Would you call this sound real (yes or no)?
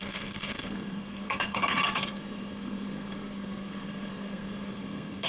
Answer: no